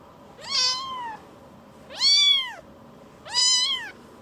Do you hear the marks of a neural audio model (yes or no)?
no